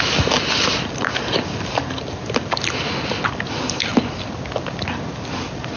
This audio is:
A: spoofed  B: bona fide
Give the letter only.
B